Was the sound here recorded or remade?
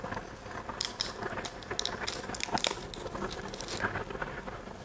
recorded